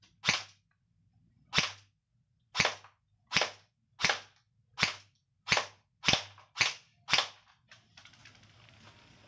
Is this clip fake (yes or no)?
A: no